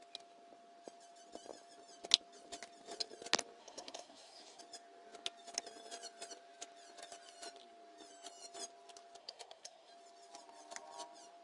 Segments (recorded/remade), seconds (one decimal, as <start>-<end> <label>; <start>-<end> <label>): 0.0-3.6 recorded; 3.6-4.6 remade; 4.6-9.2 recorded; 9.2-9.9 remade; 9.9-11.4 recorded